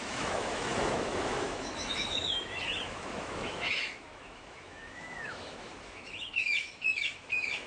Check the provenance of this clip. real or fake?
fake